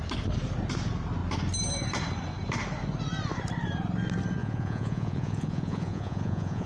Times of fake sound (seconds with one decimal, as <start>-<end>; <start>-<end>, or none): 4.4-6.7